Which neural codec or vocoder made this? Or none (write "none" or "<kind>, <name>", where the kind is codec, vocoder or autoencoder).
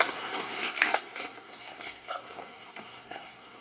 codec, SNAC